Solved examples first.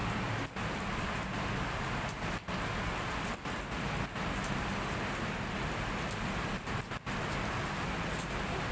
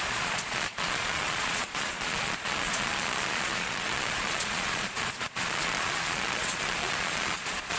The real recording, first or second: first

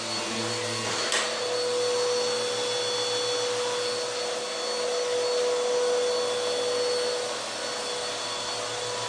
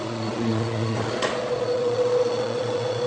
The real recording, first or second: first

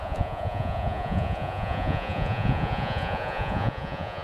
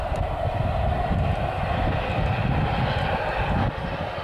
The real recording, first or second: second